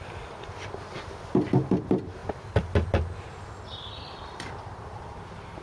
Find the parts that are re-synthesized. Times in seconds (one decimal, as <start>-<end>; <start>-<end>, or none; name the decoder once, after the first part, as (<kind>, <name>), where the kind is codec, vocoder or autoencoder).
0.0-2.2 (vocoder, BigVGAN v2); 3.3-5.6